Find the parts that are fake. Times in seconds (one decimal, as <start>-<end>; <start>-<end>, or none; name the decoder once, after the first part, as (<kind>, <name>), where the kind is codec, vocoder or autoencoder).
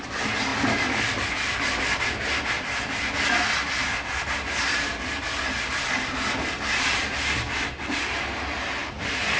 none